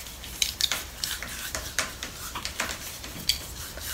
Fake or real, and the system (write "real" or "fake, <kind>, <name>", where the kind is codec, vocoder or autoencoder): fake, vocoder, BigVGAN v2